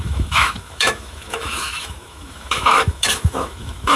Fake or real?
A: fake